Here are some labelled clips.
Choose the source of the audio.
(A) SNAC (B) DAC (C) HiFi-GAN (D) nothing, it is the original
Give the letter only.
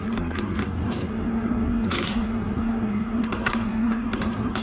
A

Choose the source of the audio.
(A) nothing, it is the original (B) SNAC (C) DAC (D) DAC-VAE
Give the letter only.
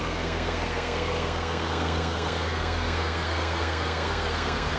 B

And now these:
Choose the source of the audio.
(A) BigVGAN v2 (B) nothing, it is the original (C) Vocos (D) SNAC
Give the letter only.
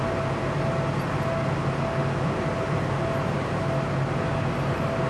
B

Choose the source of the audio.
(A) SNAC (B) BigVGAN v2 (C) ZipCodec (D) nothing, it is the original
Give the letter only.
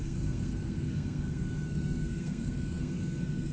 A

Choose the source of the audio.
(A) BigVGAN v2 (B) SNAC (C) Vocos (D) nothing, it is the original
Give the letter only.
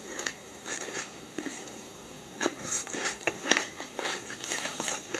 B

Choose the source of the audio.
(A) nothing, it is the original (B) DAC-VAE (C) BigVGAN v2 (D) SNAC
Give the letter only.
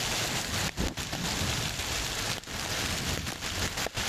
A